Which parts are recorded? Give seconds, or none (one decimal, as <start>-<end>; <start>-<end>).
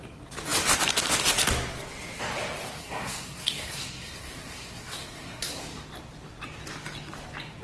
0.0-2.8; 5.6-7.6